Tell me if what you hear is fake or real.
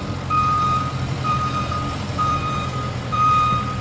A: fake